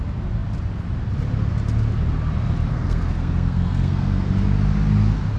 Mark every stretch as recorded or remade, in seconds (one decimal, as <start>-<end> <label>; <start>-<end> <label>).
0.0-2.7 recorded; 2.7-4.3 remade; 4.3-5.4 recorded